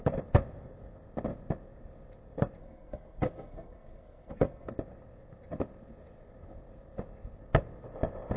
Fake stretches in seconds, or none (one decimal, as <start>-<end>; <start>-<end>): 2.6-4.7